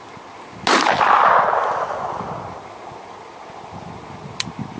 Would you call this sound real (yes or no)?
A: yes